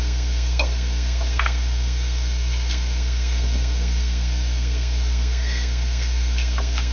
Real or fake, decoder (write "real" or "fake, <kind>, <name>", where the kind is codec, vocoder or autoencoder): fake, codec, SNAC